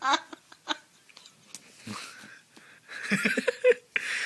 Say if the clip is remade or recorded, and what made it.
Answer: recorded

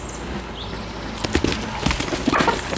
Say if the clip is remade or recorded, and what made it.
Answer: recorded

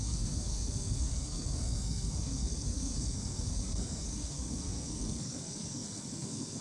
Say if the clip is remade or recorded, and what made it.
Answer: remade, codec, SNAC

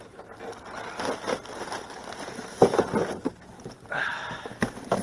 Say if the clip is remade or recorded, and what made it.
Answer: recorded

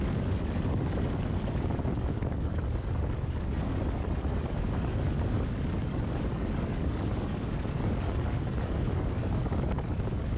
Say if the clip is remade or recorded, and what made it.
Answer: remade, codec, DAC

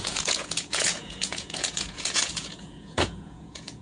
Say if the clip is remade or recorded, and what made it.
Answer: remade, vocoder, Vocos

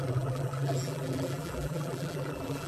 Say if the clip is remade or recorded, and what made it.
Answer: remade, vocoder, BigVGAN v2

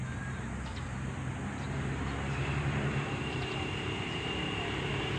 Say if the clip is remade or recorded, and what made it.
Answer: remade, vocoder, BigVGAN v2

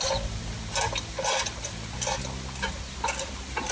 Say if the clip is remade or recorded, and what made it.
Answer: recorded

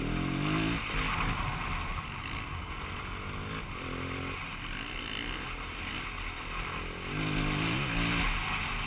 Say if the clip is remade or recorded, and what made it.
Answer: recorded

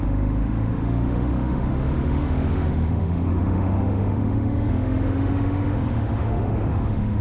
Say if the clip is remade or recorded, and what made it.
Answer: remade, autoencoder, DAC-VAE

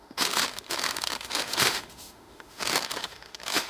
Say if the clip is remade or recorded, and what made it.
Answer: remade, autoencoder, DAC-VAE